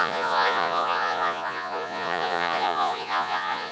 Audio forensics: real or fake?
fake